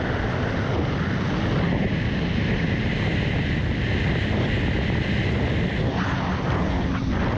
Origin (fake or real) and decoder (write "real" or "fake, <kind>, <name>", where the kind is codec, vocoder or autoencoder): real